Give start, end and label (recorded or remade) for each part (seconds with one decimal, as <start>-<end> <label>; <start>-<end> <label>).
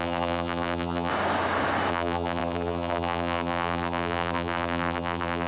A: 0.0-1.1 remade; 1.1-1.9 recorded; 1.9-5.5 remade